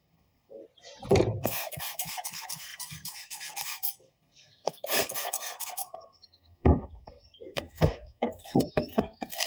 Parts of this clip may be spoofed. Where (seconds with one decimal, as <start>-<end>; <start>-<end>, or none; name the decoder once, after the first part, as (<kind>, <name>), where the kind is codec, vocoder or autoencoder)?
0.0-0.6 (codec, SNAC); 1.4-9.5